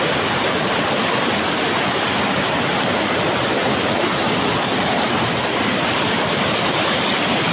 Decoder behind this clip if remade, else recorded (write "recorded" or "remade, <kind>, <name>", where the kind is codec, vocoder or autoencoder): recorded